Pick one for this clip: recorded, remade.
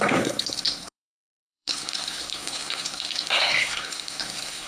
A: remade